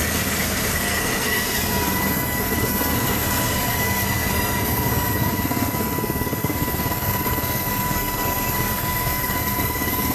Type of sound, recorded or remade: remade